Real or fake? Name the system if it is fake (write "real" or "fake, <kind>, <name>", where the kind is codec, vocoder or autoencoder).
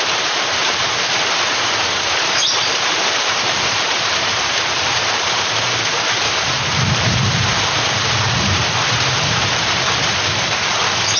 fake, vocoder, BigVGAN v2